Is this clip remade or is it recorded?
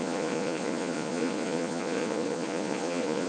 remade